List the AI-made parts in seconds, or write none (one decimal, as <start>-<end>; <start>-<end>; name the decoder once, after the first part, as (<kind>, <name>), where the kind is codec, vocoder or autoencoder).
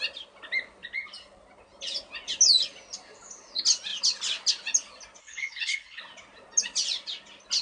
5.2-6.0 (codec, HILCodec)